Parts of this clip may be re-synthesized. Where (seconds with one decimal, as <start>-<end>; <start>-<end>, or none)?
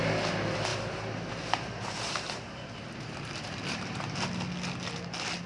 0.7-4.0